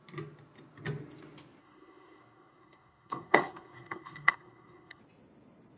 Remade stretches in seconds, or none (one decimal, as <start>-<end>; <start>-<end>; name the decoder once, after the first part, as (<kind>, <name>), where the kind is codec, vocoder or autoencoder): 1.6-5.0 (codec, SNAC)